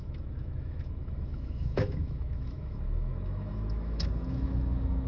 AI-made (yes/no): yes